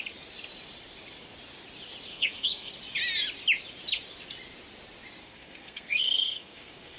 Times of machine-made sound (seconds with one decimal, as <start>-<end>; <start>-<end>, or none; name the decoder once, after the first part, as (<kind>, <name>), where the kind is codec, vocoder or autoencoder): 2.1-2.7 (codec, SNAC); 5.2-7.0